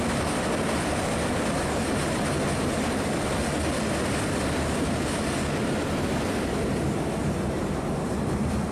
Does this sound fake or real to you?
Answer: real